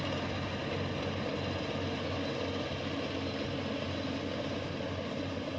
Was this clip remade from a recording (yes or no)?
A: no